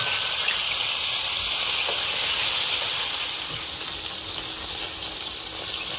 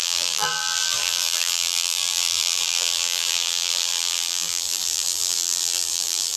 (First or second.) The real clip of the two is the first